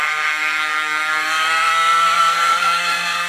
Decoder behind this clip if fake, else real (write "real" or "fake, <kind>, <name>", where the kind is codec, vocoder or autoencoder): fake, codec, SNAC